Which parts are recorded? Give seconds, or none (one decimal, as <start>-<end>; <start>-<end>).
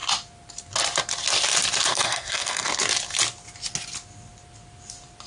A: 0.0-1.9; 2.7-5.3